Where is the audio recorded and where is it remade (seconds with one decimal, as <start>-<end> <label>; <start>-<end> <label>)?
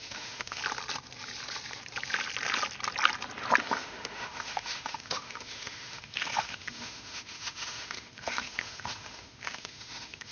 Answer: 0.0-0.6 remade; 0.6-3.6 recorded; 3.6-10.3 remade